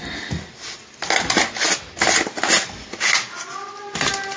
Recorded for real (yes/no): yes